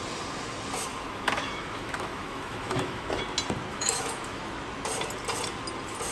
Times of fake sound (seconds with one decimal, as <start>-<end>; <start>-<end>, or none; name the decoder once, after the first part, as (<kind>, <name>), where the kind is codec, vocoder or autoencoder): 0.9-3.2 (autoencoder, DAC-VAE); 3.7-4.4